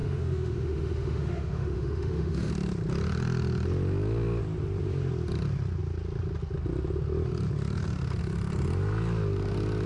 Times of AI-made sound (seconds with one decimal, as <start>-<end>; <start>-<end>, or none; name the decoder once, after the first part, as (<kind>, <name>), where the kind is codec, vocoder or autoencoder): 0.0-2.5 (autoencoder, DAC-VAE)